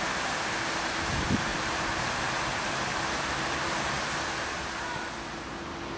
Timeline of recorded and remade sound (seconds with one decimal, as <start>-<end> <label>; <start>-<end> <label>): 0.0-1.5 recorded; 1.5-2.5 remade; 2.5-2.9 recorded; 2.9-4.1 remade; 4.1-6.0 recorded